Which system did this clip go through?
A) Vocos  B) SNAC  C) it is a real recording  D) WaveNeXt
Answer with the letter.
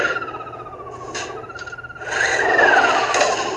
C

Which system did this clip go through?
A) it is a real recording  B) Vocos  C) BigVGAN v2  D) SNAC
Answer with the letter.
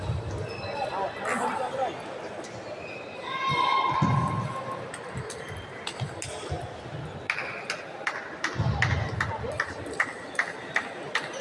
A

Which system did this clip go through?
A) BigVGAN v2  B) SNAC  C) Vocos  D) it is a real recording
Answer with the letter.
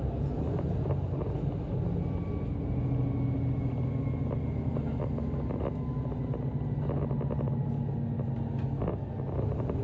D